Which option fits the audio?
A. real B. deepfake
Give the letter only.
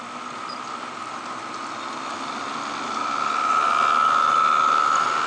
A